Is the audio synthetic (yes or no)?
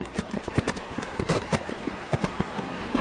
yes